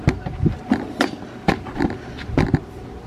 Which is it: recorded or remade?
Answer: recorded